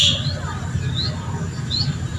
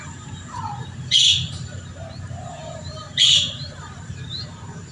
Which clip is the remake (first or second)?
second